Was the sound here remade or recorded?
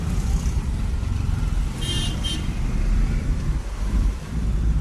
remade